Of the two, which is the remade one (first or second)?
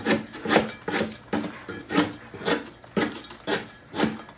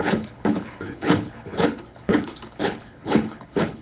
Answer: second